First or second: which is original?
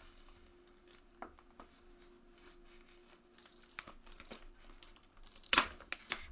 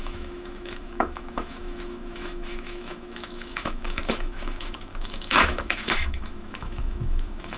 first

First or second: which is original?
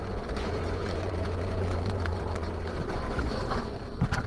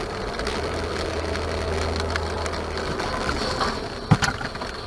second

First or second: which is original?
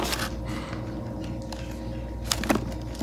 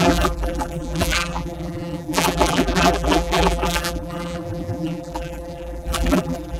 first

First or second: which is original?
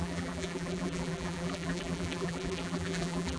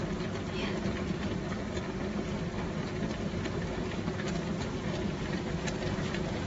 second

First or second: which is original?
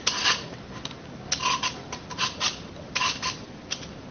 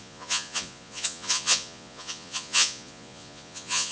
first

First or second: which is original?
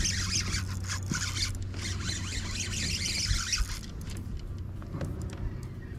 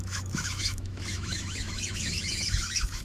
first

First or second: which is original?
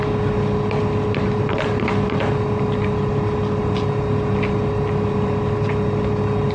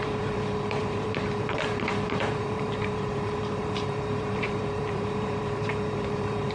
first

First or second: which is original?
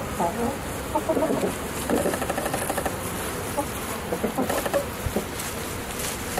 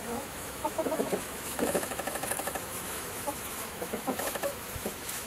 first